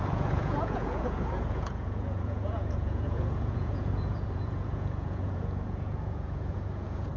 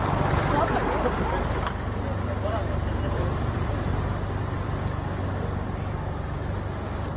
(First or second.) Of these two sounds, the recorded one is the second